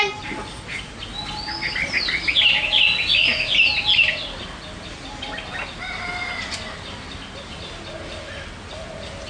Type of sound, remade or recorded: recorded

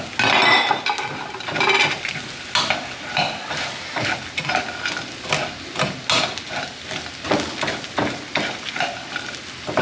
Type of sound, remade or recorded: recorded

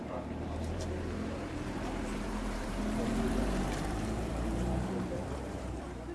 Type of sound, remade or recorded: remade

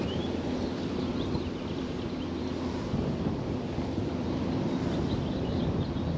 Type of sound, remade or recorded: recorded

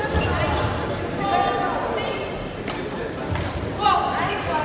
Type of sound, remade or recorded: recorded